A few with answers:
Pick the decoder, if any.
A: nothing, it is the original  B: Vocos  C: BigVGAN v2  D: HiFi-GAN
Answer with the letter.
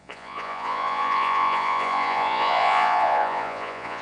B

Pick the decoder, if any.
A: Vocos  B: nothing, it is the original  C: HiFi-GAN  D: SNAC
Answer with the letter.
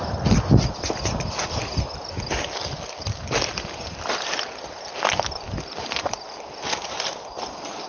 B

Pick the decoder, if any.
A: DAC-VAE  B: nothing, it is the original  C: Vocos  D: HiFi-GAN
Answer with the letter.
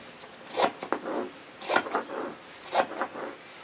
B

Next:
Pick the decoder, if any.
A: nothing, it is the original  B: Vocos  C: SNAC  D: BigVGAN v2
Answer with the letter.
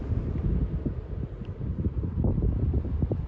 A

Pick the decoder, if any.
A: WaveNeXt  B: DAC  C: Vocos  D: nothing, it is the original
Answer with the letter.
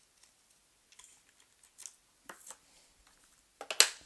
D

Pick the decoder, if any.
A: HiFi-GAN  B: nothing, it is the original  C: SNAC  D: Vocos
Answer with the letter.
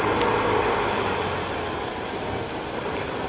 B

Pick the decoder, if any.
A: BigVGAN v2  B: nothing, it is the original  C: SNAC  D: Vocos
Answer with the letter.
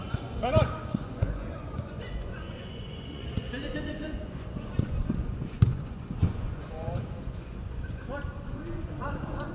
D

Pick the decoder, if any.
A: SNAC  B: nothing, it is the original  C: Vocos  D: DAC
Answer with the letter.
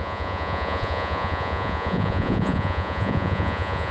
C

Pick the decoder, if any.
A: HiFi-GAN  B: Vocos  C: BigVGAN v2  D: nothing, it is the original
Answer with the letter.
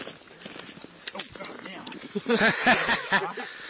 D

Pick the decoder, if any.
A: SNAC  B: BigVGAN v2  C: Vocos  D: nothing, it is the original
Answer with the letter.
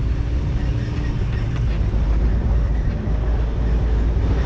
D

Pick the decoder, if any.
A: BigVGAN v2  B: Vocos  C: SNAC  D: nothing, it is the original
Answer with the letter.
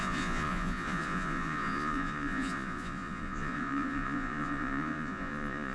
B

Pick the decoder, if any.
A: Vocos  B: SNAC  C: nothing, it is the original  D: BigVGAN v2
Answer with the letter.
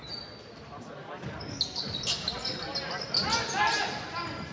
C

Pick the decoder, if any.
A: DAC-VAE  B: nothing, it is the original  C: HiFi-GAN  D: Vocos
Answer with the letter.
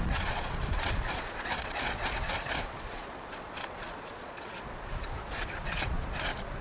D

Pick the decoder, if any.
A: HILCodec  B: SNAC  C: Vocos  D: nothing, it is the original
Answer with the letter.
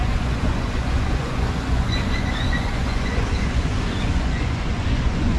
C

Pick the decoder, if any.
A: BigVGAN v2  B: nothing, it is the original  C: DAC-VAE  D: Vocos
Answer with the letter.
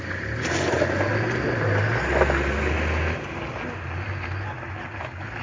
B